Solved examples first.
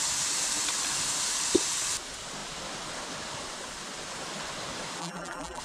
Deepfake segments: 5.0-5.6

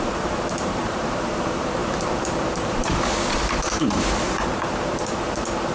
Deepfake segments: 0.0-5.7